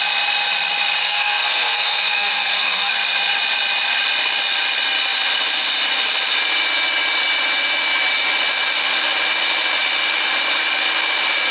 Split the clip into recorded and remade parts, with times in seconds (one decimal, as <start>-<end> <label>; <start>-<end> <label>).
0.0-1.0 recorded; 1.0-2.9 remade; 2.9-11.5 recorded